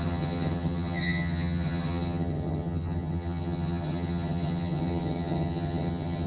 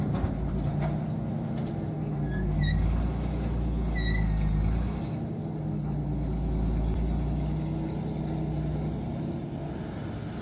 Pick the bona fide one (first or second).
second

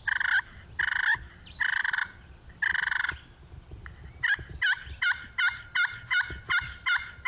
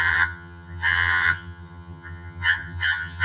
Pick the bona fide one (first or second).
first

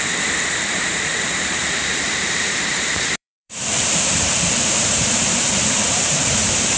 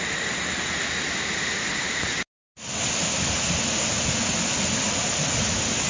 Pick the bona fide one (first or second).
second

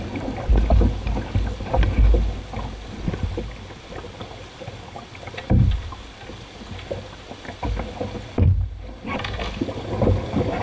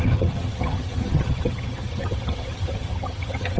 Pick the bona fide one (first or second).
first